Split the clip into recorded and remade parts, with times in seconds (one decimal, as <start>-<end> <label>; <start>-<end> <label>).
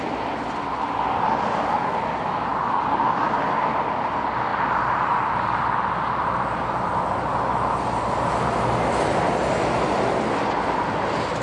0.0-11.4 recorded